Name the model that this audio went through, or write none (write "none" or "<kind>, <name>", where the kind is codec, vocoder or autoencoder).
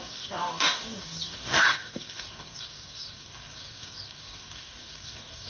codec, DAC